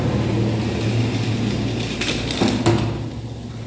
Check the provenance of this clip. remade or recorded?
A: recorded